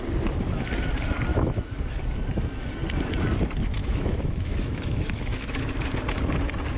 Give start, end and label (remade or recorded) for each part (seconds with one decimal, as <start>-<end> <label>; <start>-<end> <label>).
0.0-1.3 recorded; 1.3-2.0 remade; 2.0-3.8 recorded; 3.8-5.6 remade; 5.6-6.8 recorded